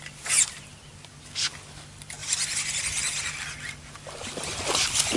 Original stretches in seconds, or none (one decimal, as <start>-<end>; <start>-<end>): 0.0-5.2

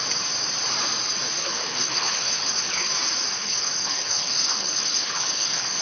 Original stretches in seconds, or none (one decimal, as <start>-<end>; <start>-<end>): 0.0-1.4; 2.9-3.3